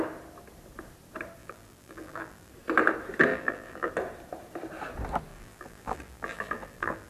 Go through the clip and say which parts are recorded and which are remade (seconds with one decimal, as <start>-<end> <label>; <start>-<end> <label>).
0.0-1.4 recorded; 1.4-2.5 remade; 2.5-3.3 recorded; 3.3-3.9 remade; 3.9-5.3 recorded; 5.3-7.1 remade